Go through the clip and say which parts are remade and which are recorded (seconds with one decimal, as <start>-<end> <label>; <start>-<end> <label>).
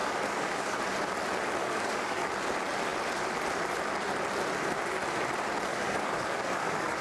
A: 0.0-0.8 remade; 0.8-1.6 recorded; 1.6-2.2 remade; 2.2-5.7 recorded; 5.7-7.0 remade